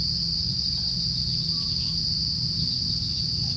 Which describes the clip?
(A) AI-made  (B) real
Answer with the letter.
B